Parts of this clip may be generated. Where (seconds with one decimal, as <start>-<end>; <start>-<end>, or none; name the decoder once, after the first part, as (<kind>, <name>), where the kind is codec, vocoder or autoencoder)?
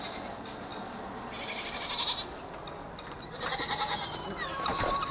none